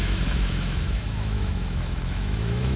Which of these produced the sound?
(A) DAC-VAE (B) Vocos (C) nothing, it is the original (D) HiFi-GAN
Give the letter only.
A